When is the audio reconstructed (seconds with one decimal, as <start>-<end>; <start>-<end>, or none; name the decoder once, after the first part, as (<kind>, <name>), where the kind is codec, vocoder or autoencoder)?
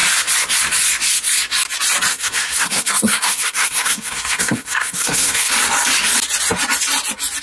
2.1-5.5 (codec, SNAC)